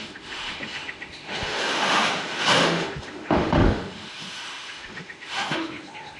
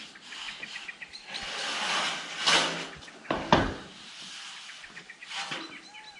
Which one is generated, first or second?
first